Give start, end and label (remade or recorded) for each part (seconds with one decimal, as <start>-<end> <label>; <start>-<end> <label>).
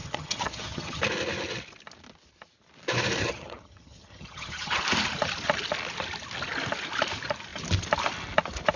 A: 0.0-1.0 remade; 1.0-3.2 recorded; 3.2-4.8 remade; 4.8-8.8 recorded